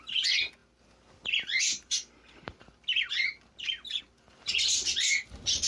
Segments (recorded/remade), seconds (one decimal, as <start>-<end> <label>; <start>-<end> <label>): 0.0-5.7 remade